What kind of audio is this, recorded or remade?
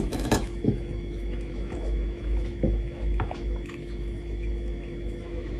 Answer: remade